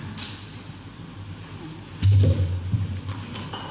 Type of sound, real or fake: real